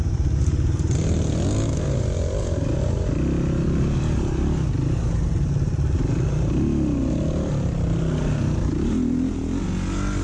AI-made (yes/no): no